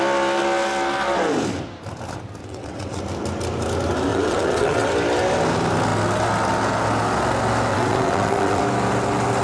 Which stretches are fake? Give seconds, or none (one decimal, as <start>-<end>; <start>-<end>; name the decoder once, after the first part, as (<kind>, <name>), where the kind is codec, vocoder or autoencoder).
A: 2.4-3.0 (vocoder, WaveNeXt); 4.1-4.9; 7.7-8.6